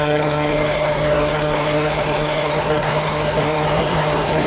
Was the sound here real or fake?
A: fake